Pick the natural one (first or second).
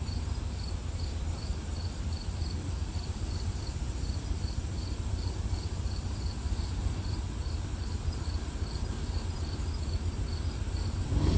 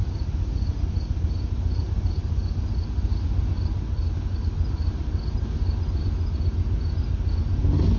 second